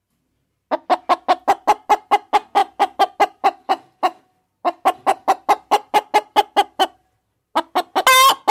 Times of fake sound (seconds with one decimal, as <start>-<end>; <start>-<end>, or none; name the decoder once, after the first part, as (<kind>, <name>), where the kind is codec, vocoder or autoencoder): none